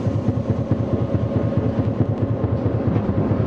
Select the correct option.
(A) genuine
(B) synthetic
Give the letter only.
A